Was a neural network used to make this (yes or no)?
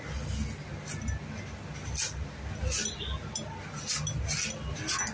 no